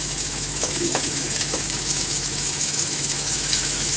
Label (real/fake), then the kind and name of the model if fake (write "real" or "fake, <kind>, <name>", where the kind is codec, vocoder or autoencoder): fake, autoencoder, DAC-VAE